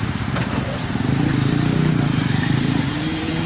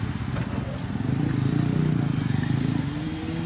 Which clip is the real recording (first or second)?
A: second